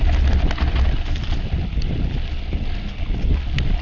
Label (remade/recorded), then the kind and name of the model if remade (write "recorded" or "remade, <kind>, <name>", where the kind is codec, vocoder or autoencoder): recorded